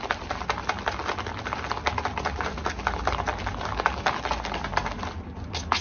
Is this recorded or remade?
recorded